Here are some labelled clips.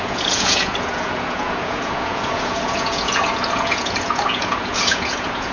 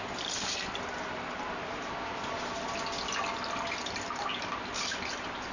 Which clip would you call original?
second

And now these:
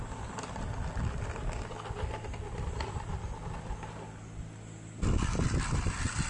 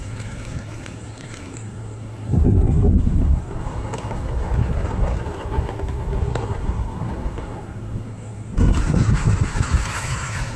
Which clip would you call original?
first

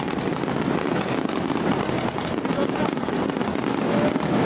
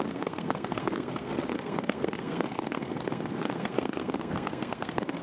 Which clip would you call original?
first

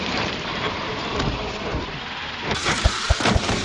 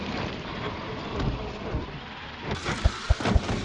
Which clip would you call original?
second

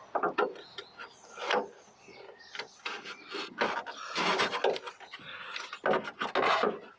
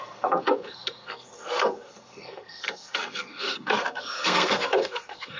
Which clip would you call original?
first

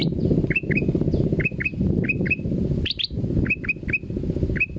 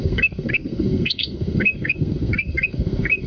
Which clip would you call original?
first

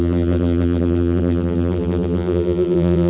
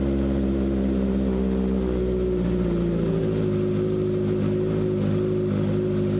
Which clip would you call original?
second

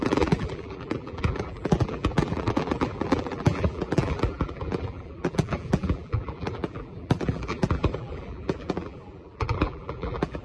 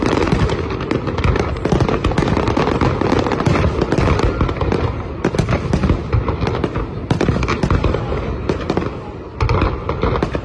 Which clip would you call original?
second